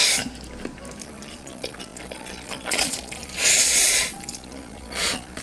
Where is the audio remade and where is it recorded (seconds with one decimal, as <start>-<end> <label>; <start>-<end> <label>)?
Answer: 0.0-1.0 recorded; 1.0-5.4 remade